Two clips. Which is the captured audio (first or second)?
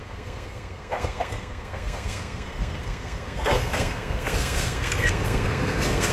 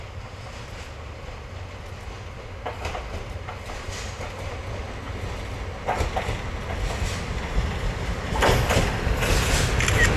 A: second